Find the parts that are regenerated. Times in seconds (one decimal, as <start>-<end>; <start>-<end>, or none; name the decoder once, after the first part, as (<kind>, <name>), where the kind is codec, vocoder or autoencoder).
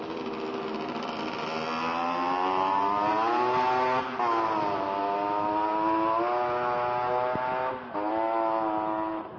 none